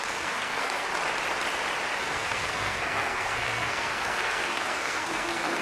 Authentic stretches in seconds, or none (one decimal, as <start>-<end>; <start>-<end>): 0.9-2.0